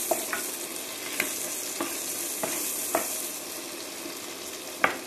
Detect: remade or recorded recorded